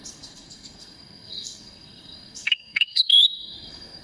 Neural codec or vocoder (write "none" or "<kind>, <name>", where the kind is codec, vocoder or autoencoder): codec, SNAC